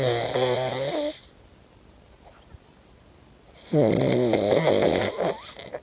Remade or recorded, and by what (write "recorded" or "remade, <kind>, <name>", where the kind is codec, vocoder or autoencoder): recorded